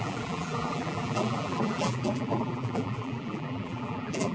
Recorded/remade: remade